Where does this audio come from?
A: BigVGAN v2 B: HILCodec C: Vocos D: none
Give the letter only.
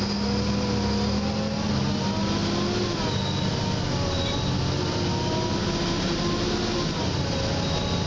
D